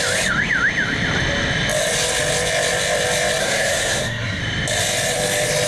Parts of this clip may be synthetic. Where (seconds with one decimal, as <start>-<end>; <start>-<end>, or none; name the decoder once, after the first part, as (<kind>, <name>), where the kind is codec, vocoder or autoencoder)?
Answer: 3.4-4.4 (codec, SNAC)